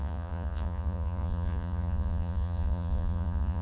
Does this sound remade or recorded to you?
remade